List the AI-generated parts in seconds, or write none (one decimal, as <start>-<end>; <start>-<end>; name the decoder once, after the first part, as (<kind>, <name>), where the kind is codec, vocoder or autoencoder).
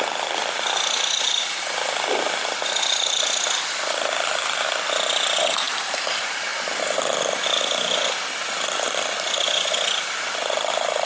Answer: none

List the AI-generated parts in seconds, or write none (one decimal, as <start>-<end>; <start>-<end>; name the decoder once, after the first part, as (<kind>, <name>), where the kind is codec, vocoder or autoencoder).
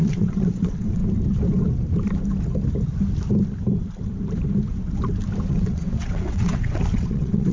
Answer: 0.0-1.0 (vocoder, WaveNeXt); 5.5-7.5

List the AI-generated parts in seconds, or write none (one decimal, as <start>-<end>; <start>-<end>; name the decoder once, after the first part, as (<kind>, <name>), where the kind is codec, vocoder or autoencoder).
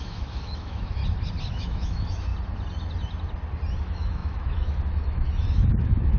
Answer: 0.0-1.0 (autoencoder, DAC-VAE); 1.5-2.3; 3.8-6.2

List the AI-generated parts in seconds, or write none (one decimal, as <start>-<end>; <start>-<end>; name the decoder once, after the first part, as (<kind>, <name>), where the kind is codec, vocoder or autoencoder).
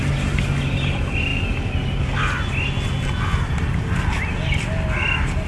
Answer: none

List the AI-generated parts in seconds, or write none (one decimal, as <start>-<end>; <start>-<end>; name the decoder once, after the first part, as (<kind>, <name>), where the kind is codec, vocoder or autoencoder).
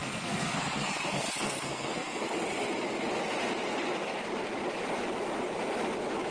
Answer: 0.0-2.2 (codec, SNAC)